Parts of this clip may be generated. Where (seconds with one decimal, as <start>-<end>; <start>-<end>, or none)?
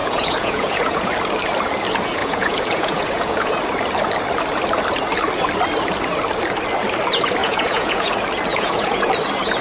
0.0-1.1; 2.2-3.5; 7.4-8.1; 8.5-9.1